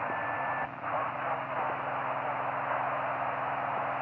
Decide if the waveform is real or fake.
real